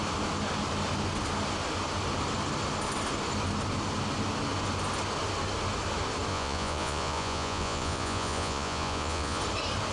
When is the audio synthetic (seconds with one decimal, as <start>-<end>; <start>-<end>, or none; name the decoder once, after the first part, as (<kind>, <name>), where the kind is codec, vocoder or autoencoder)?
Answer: 6.3-9.4 (vocoder, Vocos)